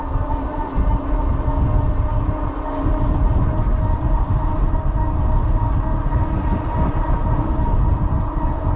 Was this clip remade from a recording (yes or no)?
no